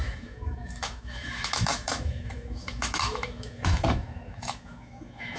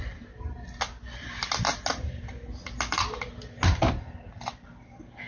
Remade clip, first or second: first